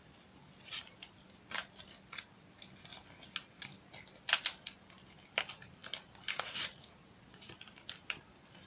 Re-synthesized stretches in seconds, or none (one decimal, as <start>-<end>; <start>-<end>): none

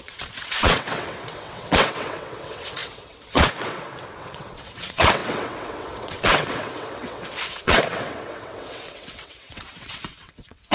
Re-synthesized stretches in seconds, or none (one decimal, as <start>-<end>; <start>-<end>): 0.0-10.7